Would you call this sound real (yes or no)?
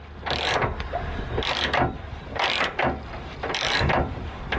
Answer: yes